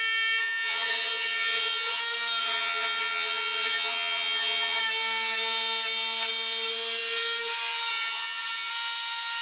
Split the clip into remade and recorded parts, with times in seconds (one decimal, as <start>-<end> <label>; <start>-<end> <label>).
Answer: 0.0-0.4 recorded; 0.4-2.0 remade; 2.0-2.4 recorded; 2.4-4.8 remade; 4.8-7.9 recorded; 7.9-8.7 remade; 8.7-9.4 recorded